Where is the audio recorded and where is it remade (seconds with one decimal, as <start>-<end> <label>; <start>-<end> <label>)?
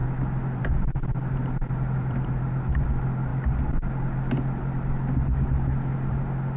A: 0.0-6.6 recorded